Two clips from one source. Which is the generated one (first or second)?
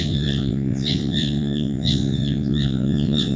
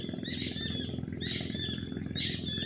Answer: first